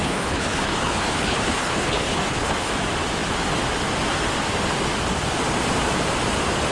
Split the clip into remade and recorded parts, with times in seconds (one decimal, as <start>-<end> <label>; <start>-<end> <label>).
0.0-2.7 remade; 2.7-6.7 recorded